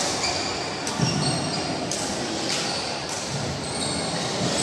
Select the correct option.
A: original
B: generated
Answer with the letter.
A